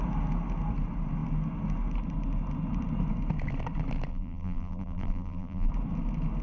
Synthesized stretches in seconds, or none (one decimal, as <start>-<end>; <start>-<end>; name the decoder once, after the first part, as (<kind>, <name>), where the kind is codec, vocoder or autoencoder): 4.1-5.7 (vocoder, BigVGAN v2)

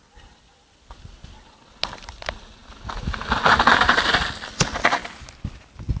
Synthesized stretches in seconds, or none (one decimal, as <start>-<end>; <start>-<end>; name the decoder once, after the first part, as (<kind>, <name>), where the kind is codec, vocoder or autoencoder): none

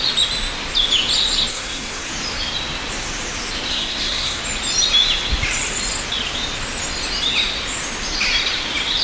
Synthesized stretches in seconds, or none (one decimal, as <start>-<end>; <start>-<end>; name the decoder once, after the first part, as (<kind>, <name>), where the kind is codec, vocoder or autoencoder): 1.5-2.1 (codec, SNAC); 3.7-4.4

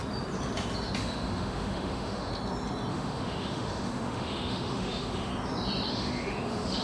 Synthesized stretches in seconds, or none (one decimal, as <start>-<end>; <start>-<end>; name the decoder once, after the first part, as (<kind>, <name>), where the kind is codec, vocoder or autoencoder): 1.0-2.3 (autoencoder, DAC-VAE); 2.9-5.3; 5.9-6.8

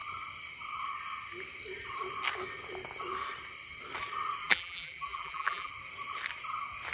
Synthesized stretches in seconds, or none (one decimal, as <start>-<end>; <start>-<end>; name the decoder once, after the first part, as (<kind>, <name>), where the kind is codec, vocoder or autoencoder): 4.4-5.7 (vocoder, BigVGAN v2)

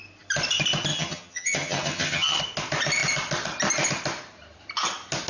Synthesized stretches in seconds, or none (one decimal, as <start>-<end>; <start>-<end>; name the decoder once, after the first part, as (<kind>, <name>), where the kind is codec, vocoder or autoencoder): 0.9-2.4 (vocoder, HiFi-GAN)

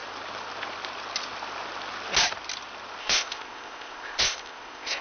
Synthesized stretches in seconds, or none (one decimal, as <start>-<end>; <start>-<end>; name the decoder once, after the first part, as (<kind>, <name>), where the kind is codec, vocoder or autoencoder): 3.0-5.0 (codec, ZipCodec)